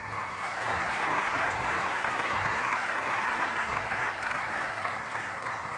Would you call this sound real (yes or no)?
no